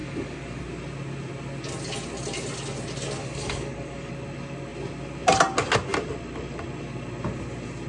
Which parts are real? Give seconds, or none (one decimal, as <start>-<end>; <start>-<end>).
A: 0.6-3.2; 4.1-7.9